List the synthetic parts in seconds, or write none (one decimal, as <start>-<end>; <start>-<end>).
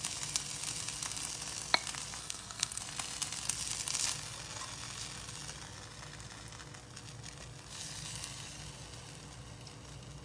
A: 2.2-2.8